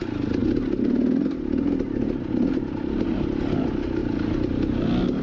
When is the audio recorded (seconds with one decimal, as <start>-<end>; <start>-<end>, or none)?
0.0-5.2